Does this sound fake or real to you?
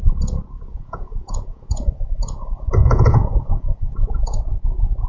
fake